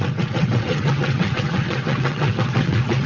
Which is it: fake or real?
fake